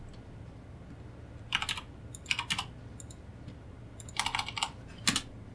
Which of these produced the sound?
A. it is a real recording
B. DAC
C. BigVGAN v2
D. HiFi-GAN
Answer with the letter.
A